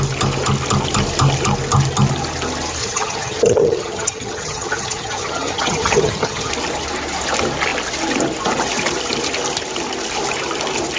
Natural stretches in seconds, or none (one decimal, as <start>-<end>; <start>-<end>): 0.0-2.8; 6.5-11.0